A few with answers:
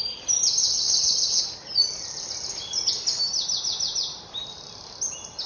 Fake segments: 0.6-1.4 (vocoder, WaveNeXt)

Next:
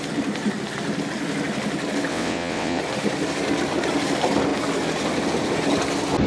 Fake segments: 2.1-2.8 (vocoder, WaveNeXt)

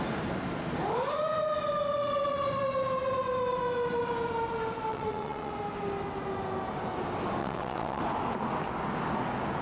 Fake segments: 4.9-5.5 (vocoder, WaveNeXt); 7.4-8.0

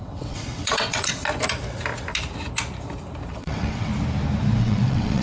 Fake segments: 0.0-1.2 (vocoder, WaveNeXt); 3.3-3.9; 4.6-5.2

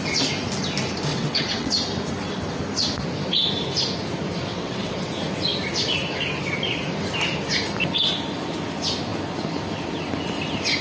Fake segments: 1.1-1.7 (vocoder, WaveNeXt); 4.5-5.1

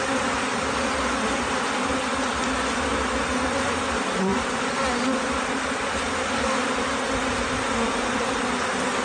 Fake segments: none

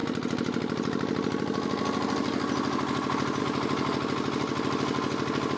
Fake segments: none